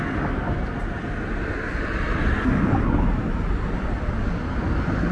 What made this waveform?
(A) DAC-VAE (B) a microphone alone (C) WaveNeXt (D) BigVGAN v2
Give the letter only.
B